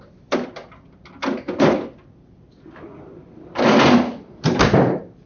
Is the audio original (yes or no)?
yes